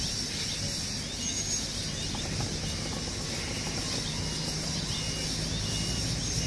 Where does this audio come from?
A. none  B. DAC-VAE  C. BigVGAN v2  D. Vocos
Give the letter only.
A